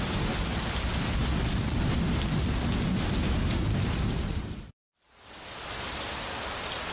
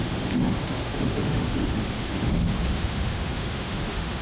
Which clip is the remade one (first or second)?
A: second